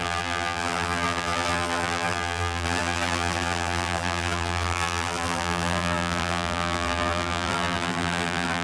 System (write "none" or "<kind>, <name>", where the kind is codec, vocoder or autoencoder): vocoder, BigVGAN v2